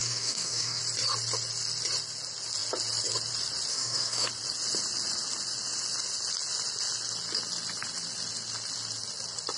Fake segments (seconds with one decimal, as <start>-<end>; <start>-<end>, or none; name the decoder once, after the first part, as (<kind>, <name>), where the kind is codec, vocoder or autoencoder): 0.0-0.8 (codec, DAC); 3.7-4.3